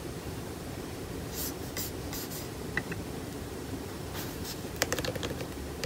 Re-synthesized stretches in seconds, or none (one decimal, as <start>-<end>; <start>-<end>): 0.0-1.4; 4.2-5.1